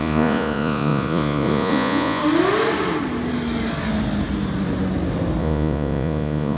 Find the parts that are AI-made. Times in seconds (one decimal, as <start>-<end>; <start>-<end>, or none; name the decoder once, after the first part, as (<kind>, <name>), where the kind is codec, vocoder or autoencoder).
0.0-2.2 (vocoder, Vocos); 5.4-6.6